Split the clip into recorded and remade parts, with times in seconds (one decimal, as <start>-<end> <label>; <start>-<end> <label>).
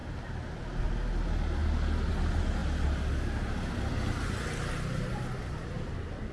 0.0-6.3 recorded